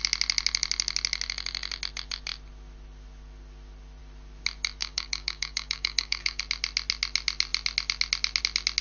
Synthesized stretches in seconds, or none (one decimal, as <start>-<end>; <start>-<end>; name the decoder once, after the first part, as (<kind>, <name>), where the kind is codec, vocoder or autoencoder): 4.8-6.4 (codec, DAC)